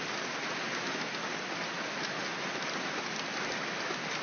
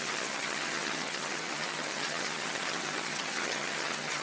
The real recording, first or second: first